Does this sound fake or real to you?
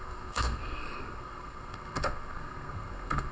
fake